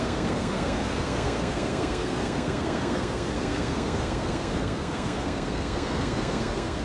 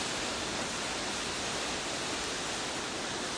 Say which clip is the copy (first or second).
first